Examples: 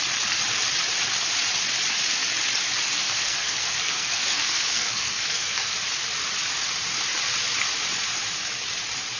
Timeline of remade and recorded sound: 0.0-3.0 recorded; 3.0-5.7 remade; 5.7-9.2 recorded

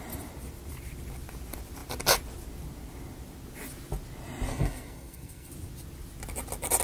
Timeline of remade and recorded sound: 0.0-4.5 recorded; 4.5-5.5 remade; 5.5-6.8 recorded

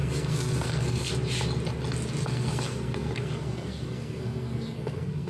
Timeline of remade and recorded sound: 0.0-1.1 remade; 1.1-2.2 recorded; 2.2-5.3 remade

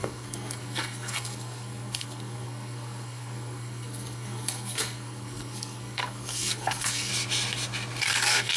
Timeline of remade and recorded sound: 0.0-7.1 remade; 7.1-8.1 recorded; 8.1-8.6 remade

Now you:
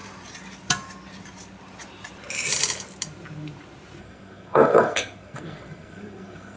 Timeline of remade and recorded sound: 0.0-4.0 recorded; 4.0-6.6 remade

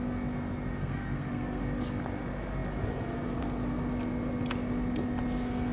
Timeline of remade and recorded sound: 0.0-0.8 recorded; 0.8-1.6 remade; 1.6-5.7 recorded

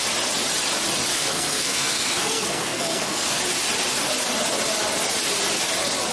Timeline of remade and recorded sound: 0.0-1.1 recorded; 1.1-3.4 remade; 3.4-6.1 recorded

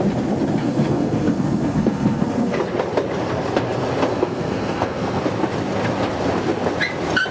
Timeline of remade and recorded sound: 0.0-0.6 recorded; 0.6-2.6 remade; 2.6-4.1 recorded; 4.1-5.2 remade; 5.2-7.3 recorded